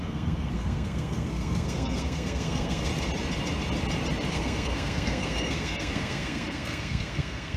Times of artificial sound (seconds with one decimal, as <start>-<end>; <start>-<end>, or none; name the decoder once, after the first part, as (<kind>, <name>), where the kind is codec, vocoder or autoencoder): 0.0-2.9 (codec, SNAC); 4.3-7.6